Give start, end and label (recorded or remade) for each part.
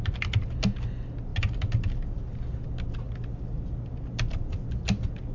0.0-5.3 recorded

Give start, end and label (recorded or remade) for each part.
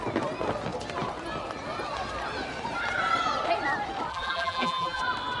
0.0-4.1 recorded; 4.1-5.0 remade; 5.0-5.4 recorded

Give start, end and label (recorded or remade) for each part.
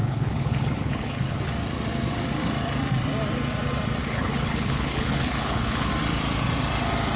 0.0-1.4 remade; 1.4-4.0 recorded; 4.0-5.9 remade; 5.9-7.2 recorded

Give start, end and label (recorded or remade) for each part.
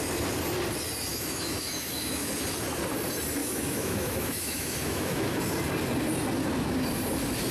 0.0-1.1 recorded; 1.1-2.3 remade; 2.3-3.4 recorded; 3.4-5.4 remade; 5.4-7.5 recorded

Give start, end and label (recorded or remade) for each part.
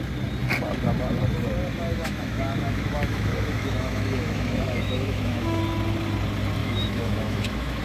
0.0-1.7 recorded; 1.7-5.6 remade; 5.6-6.6 recorded; 6.6-7.8 remade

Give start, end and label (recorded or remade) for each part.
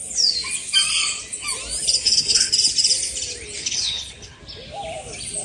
0.0-2.0 recorded; 2.0-2.5 remade; 2.5-3.6 recorded; 3.6-4.4 remade; 4.4-5.4 recorded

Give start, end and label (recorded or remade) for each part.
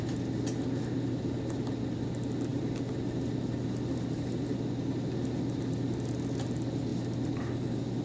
0.0-8.0 recorded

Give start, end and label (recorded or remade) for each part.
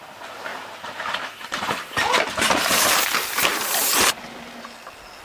0.0-0.5 recorded; 0.5-3.0 remade; 3.0-3.5 recorded; 3.5-4.0 remade; 4.0-5.2 recorded